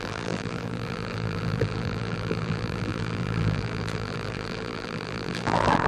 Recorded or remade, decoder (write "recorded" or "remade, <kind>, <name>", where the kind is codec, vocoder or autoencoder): remade, vocoder, BigVGAN v2